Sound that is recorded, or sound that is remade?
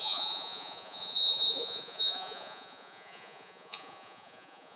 remade